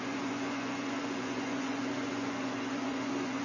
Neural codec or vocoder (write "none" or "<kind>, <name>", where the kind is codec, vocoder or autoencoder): vocoder, Vocos